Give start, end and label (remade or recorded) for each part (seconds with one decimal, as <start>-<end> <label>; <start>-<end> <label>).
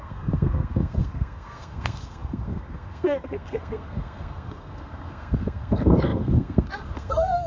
0.0-7.5 remade